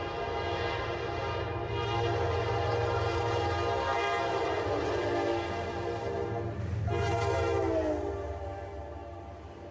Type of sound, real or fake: real